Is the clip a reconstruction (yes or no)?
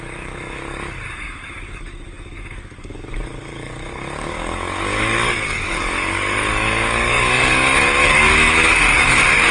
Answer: yes